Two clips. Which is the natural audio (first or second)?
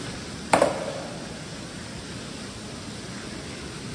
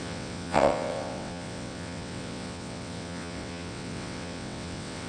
first